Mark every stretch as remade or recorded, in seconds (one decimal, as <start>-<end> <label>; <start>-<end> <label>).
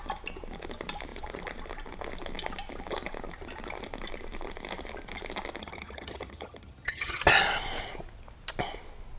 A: 0.0-5.6 recorded; 5.6-7.2 remade; 7.2-9.2 recorded